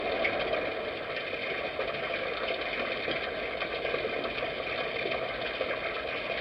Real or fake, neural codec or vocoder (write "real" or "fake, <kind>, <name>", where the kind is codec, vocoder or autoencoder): real